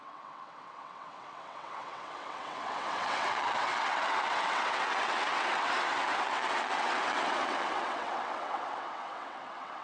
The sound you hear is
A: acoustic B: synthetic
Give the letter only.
B